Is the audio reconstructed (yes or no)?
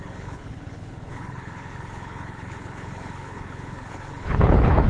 yes